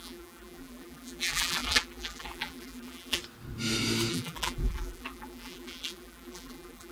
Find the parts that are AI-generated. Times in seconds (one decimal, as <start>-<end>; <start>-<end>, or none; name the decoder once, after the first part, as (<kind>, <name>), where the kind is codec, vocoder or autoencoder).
0.0-3.2 (vocoder, BigVGAN v2); 4.1-6.9